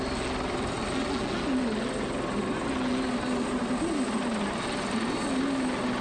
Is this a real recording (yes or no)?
yes